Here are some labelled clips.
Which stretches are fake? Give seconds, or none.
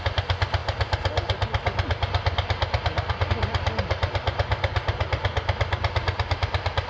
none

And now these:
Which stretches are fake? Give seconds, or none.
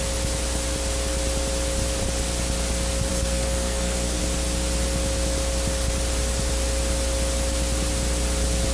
3.1-4.2 (codec, SNAC)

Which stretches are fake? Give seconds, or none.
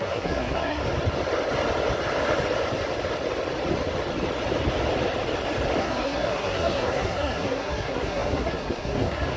0.0-0.8 (codec, SNAC); 5.8-9.4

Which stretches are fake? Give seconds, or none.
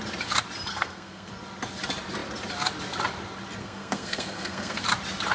0.7-1.3 (codec, SNAC); 3.6-4.8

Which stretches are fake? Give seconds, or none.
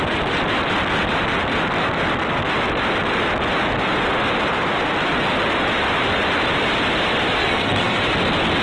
7.4-8.0 (codec, SNAC)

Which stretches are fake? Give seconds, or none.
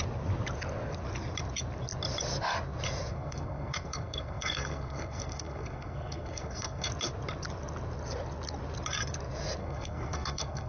3.1-6.9 (codec, SNAC); 9.6-10.7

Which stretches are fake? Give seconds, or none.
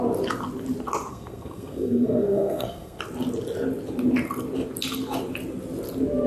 1.1-3.0 (codec, SNAC)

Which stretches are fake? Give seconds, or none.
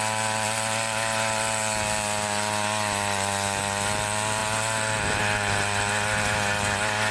none